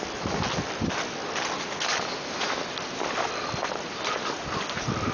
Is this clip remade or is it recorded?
recorded